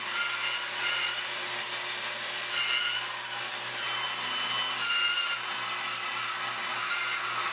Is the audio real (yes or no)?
yes